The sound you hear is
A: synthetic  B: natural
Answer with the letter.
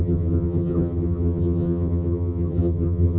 A